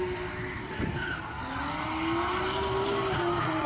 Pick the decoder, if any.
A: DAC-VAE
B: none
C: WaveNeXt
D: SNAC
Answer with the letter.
B